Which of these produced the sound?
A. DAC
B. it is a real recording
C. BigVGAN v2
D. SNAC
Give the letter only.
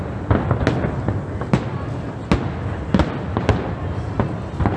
B